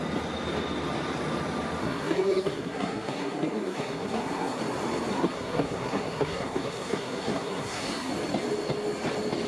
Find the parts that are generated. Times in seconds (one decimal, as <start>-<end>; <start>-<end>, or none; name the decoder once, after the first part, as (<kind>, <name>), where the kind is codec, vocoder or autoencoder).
1.8-4.6 (codec, SNAC); 5.1-8.1

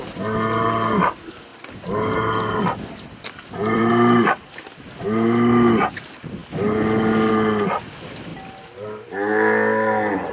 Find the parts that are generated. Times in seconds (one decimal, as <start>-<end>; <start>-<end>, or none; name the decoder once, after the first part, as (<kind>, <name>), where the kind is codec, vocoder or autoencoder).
1.5-3.9 (vocoder, BigVGAN v2); 8.3-10.3

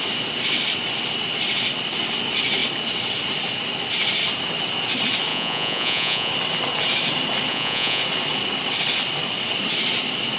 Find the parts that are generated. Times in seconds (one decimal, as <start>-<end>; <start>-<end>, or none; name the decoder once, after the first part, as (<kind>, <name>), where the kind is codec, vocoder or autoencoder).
5.3-6.3 (vocoder, Vocos); 7.5-8.0

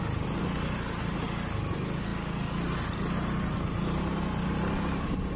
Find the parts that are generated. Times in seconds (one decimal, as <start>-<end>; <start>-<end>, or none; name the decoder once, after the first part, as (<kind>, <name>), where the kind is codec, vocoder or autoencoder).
none